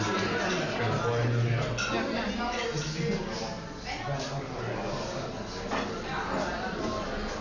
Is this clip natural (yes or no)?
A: yes